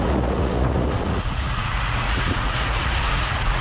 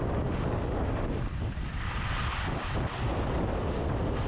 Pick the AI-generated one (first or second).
first